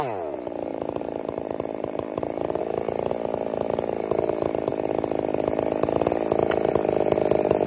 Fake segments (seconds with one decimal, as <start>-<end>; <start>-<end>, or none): 0.7-2.6